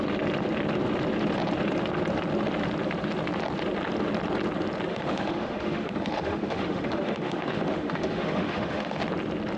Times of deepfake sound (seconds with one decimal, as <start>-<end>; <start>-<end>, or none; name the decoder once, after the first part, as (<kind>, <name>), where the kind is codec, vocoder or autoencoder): 4.9-9.0 (autoencoder, DAC-VAE)